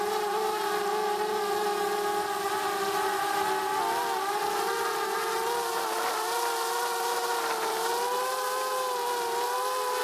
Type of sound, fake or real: real